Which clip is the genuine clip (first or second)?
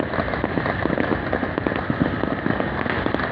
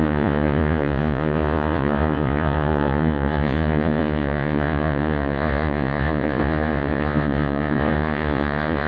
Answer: first